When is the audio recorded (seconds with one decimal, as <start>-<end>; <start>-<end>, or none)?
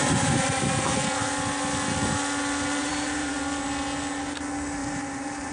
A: 0.6-2.8; 3.4-4.8